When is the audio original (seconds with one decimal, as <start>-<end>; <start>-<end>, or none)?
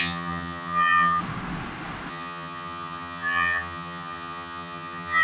1.2-2.1